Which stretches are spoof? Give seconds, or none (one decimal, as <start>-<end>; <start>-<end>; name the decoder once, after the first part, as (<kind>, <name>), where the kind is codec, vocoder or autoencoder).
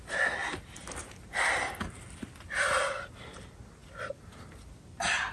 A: none